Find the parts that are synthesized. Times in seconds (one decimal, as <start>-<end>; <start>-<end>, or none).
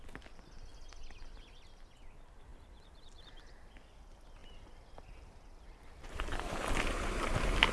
2.5-3.4; 4.4-6.7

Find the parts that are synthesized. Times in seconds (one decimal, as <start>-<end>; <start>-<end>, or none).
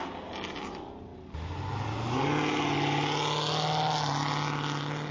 none